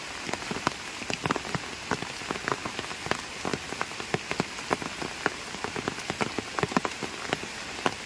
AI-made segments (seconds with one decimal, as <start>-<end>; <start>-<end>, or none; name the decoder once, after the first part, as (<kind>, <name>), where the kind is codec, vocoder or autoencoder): none